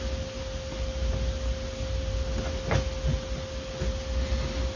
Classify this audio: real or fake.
real